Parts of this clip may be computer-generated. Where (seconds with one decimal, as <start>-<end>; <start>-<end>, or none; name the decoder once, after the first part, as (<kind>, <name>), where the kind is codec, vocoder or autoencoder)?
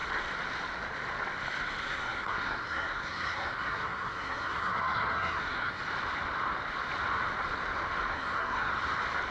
1.8-5.8 (codec, SNAC); 8.1-8.7